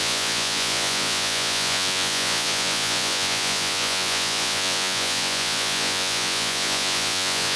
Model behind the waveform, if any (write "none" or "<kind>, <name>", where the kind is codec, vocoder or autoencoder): vocoder, Vocos